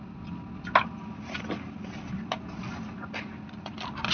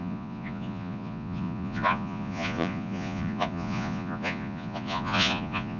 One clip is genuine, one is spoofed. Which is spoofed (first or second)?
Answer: second